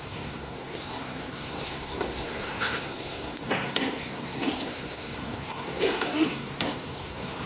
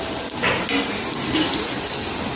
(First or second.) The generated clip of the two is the first